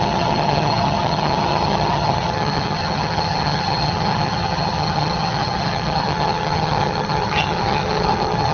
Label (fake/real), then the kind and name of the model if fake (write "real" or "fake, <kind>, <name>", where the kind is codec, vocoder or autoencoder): fake, vocoder, HiFi-GAN